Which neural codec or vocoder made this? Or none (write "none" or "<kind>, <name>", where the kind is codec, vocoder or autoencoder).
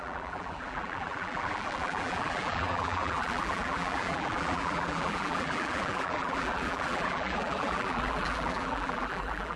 vocoder, BigVGAN v2